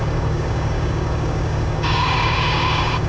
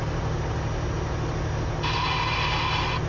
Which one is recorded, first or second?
second